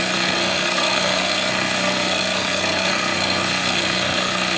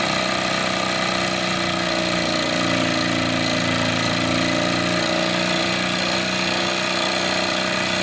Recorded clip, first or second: second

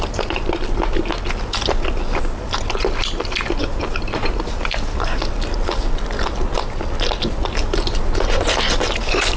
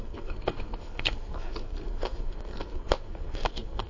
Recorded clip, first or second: first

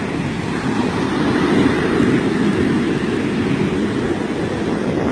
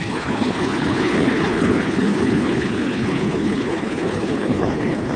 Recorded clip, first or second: first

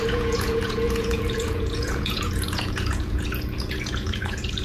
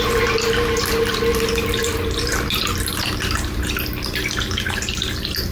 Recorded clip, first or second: second